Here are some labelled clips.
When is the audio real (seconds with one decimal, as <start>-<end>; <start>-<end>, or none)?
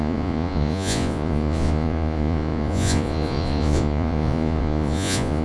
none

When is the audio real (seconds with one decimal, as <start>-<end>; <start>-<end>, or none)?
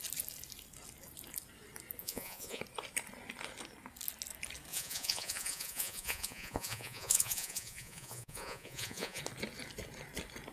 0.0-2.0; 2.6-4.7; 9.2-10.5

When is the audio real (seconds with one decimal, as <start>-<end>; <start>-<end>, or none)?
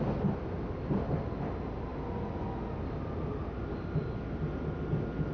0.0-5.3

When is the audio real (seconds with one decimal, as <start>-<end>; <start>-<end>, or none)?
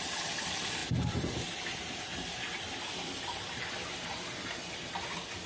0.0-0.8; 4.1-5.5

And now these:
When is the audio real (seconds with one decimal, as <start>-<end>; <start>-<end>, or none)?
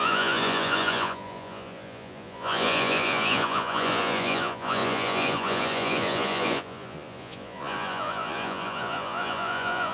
none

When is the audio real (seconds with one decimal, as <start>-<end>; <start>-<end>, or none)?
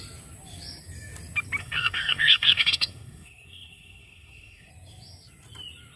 0.0-1.6; 4.7-6.0